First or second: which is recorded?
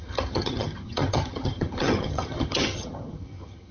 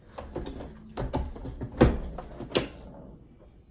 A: second